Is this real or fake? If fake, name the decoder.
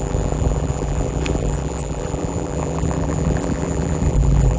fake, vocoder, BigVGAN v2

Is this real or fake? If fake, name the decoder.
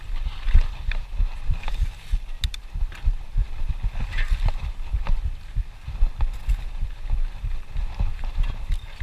real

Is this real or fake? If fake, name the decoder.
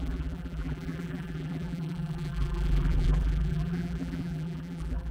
fake, vocoder, BigVGAN v2